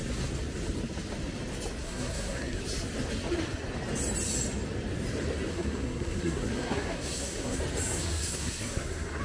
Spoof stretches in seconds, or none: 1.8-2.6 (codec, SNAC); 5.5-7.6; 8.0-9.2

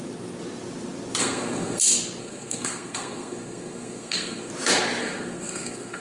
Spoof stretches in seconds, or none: 1.2-1.8 (codec, SNAC); 2.2-4.5; 5.0-6.0

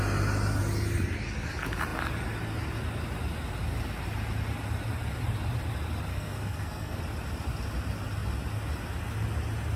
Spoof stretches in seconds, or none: 6.1-7.0 (codec, SNAC)

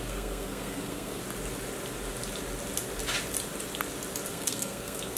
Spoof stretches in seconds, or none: 0.0-1.2 (codec, SNAC); 4.3-5.2